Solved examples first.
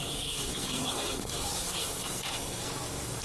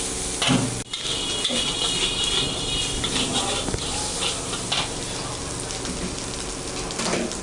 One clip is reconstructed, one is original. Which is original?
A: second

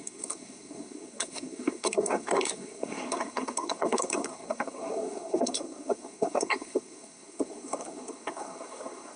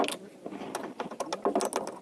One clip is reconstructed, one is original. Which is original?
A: second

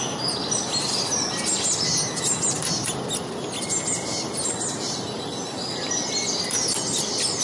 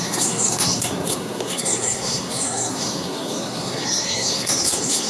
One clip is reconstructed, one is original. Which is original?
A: first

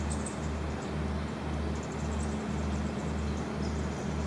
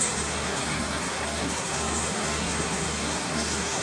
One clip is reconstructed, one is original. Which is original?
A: first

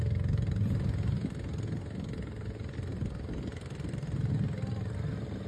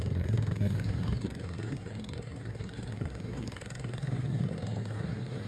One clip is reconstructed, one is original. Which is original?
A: first